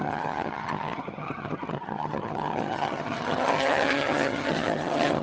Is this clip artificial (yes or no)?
yes